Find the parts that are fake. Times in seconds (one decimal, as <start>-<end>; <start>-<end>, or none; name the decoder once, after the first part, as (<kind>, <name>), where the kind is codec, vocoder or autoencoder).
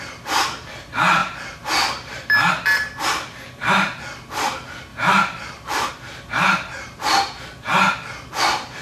1.2-2.5 (vocoder, BigVGAN v2); 4.9-5.9